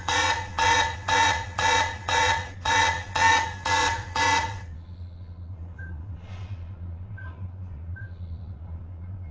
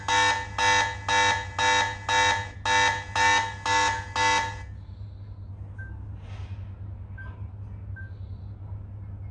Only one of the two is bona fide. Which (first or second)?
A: second